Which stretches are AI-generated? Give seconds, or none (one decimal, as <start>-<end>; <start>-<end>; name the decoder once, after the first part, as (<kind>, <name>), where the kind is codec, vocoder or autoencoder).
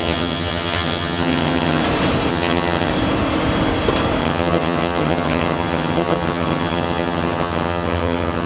0.0-1.8 (vocoder, HiFi-GAN); 2.3-2.9; 4.2-8.5